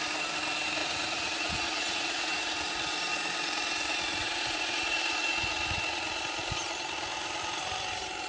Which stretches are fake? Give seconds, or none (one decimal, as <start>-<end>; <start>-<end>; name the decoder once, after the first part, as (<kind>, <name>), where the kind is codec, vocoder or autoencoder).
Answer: 0.8-2.3 (vocoder, Vocos); 4.2-6.2